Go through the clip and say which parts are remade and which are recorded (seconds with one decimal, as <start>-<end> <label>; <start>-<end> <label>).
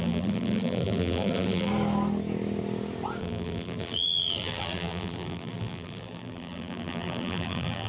0.0-1.7 remade; 1.7-3.2 recorded; 3.2-7.9 remade